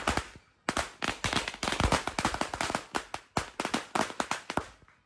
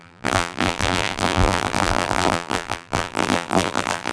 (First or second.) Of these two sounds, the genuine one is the first